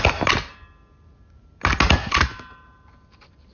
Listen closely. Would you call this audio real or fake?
real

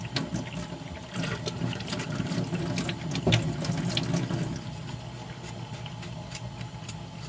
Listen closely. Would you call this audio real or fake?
real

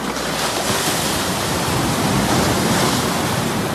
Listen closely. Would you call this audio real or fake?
real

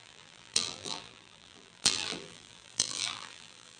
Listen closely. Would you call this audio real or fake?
fake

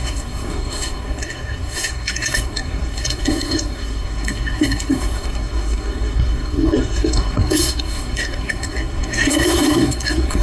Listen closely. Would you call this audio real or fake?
fake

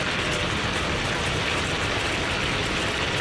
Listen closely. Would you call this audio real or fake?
real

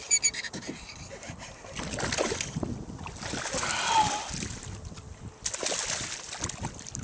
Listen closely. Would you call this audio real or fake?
real